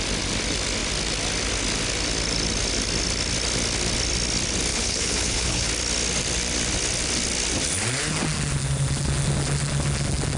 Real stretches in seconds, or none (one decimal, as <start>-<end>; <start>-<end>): 0.0-4.7; 5.7-10.4